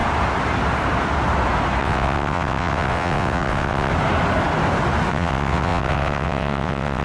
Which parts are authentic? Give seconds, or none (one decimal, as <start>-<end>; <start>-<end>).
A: 0.0-1.8; 3.9-5.1